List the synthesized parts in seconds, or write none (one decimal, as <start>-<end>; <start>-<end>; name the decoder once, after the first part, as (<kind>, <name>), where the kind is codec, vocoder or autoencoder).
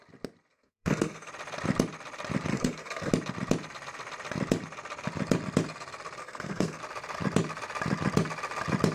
0.5-1.3 (codec, SNAC); 2.5-3.1; 6.2-6.8